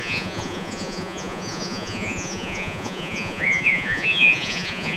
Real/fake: fake